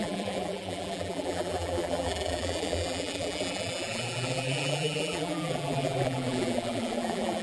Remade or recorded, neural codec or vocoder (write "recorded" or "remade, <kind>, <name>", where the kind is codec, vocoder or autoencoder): remade, vocoder, BigVGAN v2